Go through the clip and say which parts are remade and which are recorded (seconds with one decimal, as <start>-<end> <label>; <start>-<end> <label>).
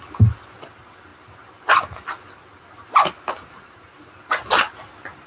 0.0-5.3 recorded